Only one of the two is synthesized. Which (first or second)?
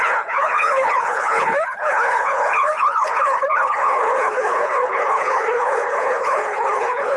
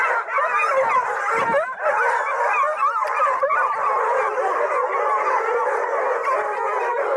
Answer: first